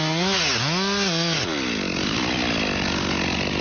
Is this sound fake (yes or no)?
no